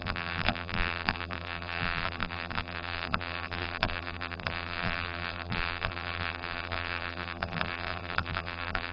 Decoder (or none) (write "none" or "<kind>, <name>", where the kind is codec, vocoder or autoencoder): vocoder, BigVGAN v2